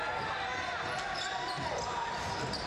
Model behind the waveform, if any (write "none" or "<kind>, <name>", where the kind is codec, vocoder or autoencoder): none